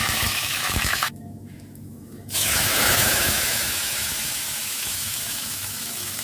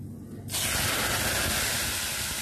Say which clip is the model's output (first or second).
first